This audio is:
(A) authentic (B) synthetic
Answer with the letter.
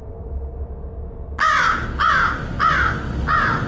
A